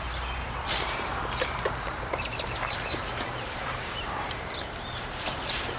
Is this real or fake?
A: fake